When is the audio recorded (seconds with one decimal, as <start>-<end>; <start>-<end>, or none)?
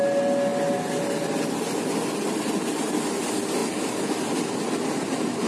0.0-5.5